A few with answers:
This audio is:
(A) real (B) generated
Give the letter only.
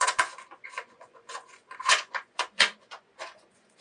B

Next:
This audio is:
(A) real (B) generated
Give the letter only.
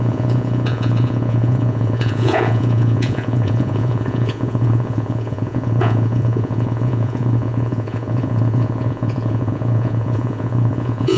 B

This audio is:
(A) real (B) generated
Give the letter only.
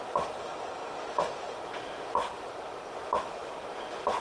A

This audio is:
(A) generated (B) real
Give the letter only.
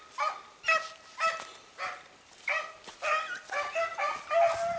B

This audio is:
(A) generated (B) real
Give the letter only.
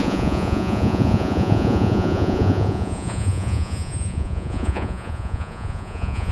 A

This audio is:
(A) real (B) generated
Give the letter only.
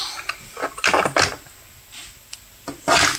A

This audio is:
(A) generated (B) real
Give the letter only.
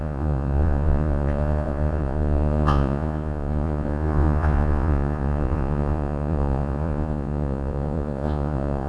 A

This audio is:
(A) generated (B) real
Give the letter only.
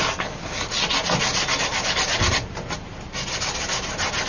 B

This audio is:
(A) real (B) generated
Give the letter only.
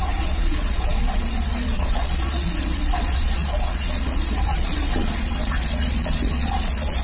B